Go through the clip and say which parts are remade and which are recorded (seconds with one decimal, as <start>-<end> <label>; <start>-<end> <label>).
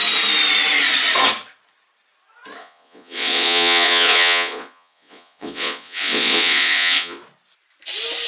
0.0-2.6 recorded; 2.6-7.2 remade; 7.2-8.3 recorded